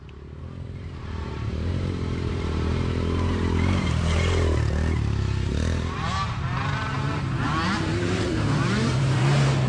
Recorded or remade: remade